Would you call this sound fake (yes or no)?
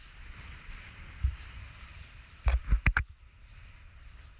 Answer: no